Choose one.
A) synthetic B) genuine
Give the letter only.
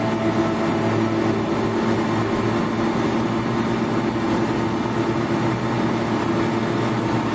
B